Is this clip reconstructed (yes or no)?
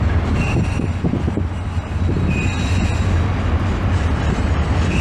no